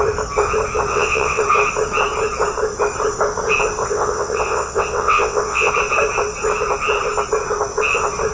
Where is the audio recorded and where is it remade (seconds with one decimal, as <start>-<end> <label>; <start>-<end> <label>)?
0.0-0.9 recorded; 0.9-1.4 remade; 1.4-3.8 recorded; 3.8-5.7 remade; 5.7-8.3 recorded